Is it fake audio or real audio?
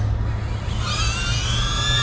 real